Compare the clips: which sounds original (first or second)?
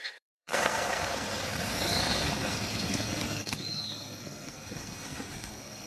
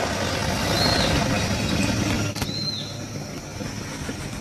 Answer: second